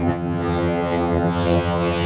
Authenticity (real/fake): fake